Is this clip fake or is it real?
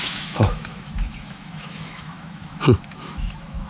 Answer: fake